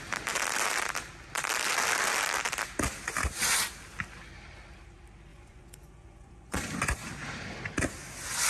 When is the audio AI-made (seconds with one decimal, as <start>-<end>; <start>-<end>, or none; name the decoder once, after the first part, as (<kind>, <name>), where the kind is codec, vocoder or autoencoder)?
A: 5.3-6.6 (vocoder, Vocos)